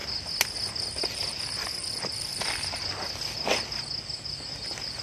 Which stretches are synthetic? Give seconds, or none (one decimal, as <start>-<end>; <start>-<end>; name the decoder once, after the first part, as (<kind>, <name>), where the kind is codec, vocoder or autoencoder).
none